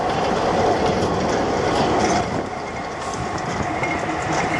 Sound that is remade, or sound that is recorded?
remade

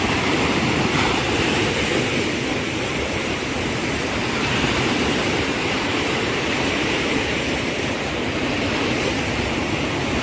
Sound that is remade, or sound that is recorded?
remade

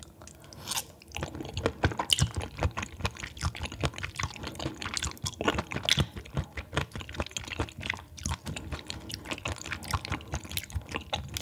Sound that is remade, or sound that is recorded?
recorded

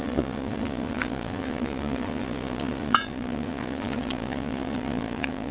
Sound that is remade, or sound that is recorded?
remade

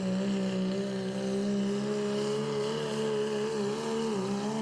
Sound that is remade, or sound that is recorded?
recorded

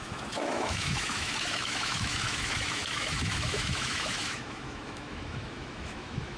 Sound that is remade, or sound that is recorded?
remade